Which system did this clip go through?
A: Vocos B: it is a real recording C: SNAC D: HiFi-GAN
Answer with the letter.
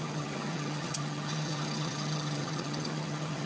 D